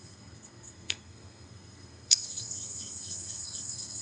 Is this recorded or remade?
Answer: remade